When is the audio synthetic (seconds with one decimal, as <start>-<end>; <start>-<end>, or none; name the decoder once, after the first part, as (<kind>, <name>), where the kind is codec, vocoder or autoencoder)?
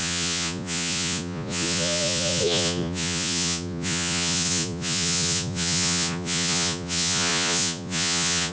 0.0-8.5 (vocoder, Vocos)